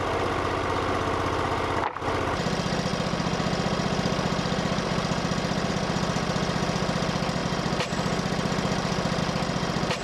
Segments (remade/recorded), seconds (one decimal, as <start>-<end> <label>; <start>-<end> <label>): 0.0-10.0 recorded